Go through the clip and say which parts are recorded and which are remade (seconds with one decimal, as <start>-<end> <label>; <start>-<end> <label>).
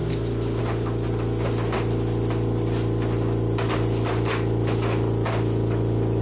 0.0-6.2 recorded